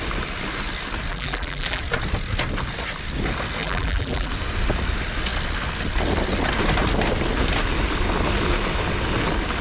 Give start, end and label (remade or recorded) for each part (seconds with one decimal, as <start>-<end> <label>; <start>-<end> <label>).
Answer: 0.0-1.1 recorded; 1.1-1.8 remade; 1.8-3.6 recorded; 3.6-4.3 remade; 4.3-9.6 recorded